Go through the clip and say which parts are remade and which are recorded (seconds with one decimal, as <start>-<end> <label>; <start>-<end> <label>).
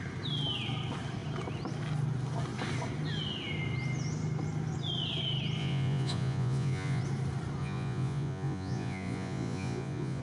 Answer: 0.0-5.6 recorded; 5.6-7.0 remade; 7.0-7.6 recorded; 7.6-10.2 remade